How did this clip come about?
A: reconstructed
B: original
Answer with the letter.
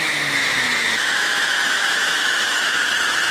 A